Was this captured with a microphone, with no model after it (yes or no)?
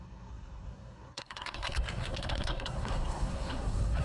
no